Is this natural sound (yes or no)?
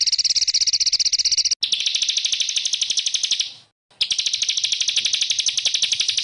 yes